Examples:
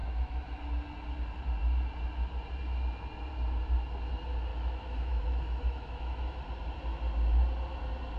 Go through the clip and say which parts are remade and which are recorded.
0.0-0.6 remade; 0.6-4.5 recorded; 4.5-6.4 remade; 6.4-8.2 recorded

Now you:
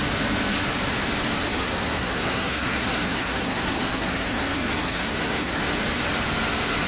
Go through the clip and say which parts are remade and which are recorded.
0.0-1.5 recorded; 1.5-5.6 remade; 5.6-6.9 recorded

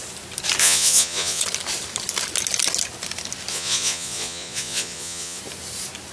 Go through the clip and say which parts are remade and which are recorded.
0.0-0.6 recorded; 0.6-1.4 remade; 1.4-3.5 recorded; 3.5-5.4 remade; 5.4-6.1 recorded

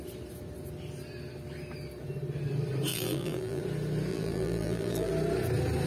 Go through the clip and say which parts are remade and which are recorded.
0.0-2.9 recorded; 2.9-3.6 remade; 3.6-4.1 recorded; 4.1-5.1 remade; 5.1-5.9 recorded

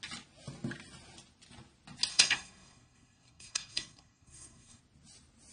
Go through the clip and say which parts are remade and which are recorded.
0.0-2.1 recorded; 2.1-4.8 remade; 4.8-5.5 recorded

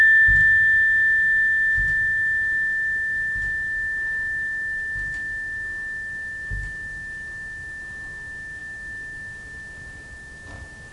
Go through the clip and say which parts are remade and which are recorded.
0.0-10.9 recorded

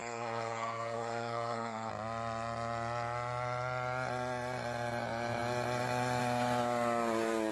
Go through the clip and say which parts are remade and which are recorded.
0.0-1.9 remade; 1.9-7.5 recorded